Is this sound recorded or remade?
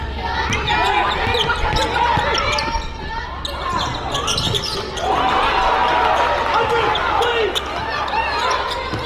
recorded